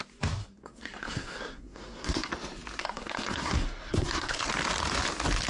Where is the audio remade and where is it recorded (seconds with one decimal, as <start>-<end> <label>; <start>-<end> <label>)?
0.0-0.4 recorded; 0.4-2.3 remade; 2.3-2.8 recorded; 2.8-4.5 remade; 4.5-5.5 recorded